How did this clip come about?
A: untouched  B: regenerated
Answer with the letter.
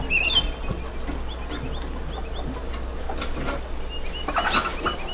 A